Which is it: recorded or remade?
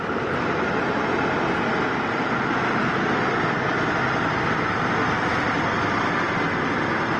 recorded